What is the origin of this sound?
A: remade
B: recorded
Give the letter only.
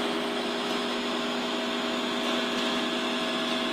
B